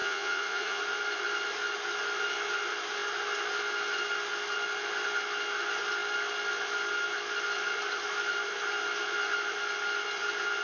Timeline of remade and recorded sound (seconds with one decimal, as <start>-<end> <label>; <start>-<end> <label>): 0.0-0.8 remade; 0.8-10.6 recorded